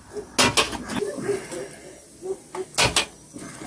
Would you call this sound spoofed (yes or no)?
no